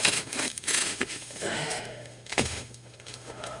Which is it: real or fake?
fake